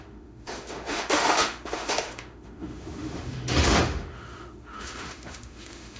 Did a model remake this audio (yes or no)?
yes